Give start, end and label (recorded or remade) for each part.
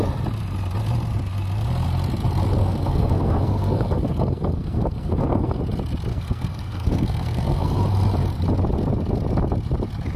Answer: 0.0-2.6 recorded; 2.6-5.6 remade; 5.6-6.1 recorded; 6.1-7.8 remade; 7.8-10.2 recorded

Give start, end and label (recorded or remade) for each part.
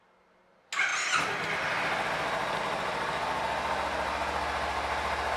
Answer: 0.0-5.4 recorded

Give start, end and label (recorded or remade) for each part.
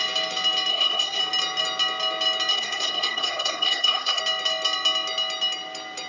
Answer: 0.0-0.7 recorded; 0.7-1.2 remade; 1.2-2.5 recorded; 2.5-4.2 remade; 4.2-6.1 recorded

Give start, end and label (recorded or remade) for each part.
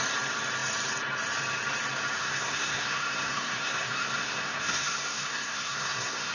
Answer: 0.0-2.2 recorded; 2.2-6.3 remade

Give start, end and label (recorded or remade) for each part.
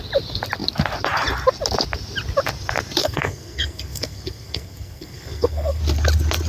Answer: 0.0-3.0 recorded; 3.0-5.8 remade; 5.8-6.5 recorded